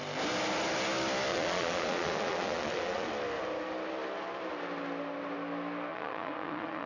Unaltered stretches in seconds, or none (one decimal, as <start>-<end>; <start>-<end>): 0.0-1.3; 3.1-5.9